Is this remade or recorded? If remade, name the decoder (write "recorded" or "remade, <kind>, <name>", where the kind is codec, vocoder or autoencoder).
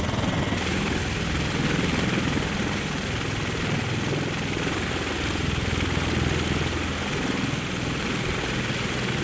recorded